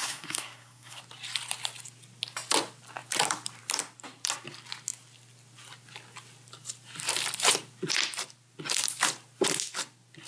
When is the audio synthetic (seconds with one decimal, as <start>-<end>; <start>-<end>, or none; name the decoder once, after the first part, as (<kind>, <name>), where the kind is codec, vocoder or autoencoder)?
0.0-1.0 (codec, SNAC)